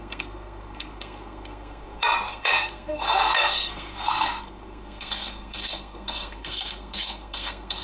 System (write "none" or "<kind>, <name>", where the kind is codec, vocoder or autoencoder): codec, SNAC